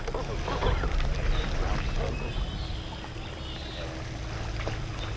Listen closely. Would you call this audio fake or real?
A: real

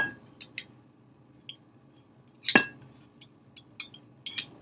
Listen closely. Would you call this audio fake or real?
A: real